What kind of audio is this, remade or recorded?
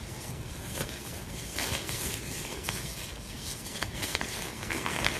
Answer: remade